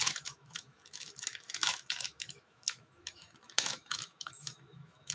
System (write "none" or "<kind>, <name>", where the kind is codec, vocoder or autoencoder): autoencoder, DAC-VAE